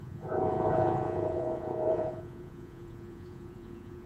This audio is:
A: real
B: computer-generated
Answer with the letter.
B